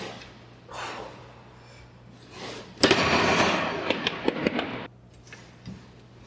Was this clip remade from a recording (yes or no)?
no